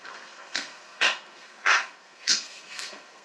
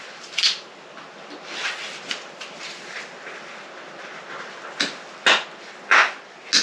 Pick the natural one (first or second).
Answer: second